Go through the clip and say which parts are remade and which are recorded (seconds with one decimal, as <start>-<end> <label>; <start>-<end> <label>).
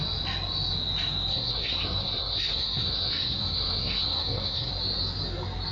0.0-1.3 recorded; 1.3-4.7 remade; 4.7-5.7 recorded